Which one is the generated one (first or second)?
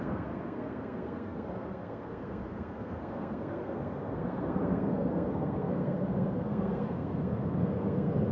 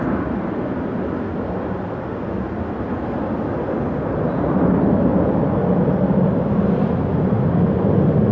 first